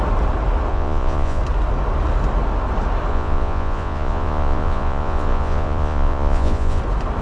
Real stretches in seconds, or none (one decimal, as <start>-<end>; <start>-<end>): 0.0-0.7; 1.4-3.1; 6.8-7.2

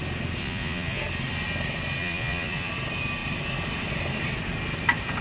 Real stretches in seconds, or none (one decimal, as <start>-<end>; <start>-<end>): 0.0-0.4; 1.0-2.0; 2.7-5.2

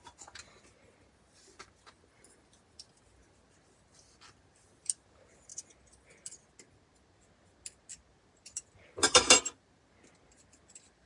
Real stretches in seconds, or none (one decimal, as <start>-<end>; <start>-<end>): 0.0-11.1

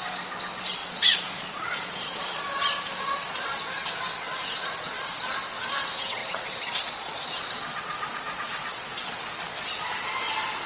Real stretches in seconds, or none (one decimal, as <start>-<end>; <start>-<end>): 0.0-0.8; 3.7-4.6; 5.1-6.2; 9.1-10.7

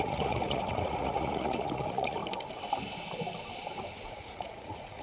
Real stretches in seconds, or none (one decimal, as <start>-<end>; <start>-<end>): 2.2-4.1